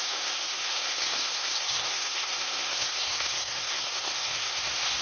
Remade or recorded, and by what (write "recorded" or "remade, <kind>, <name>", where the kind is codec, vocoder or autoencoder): remade, codec, SNAC